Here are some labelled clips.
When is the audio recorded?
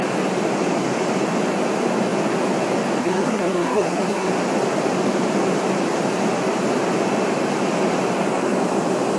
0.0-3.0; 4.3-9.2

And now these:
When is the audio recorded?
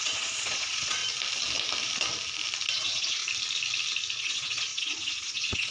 1.0-2.7; 3.2-4.2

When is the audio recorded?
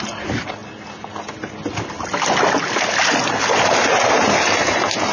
0.0-5.1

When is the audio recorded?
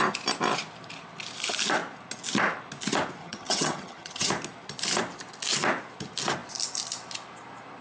0.0-3.2; 4.3-7.8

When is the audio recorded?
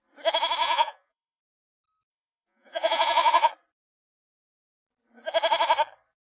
0.0-0.6; 1.4-2.1; 3.5-6.2